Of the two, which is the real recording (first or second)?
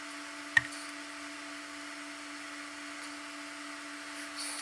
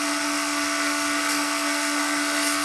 first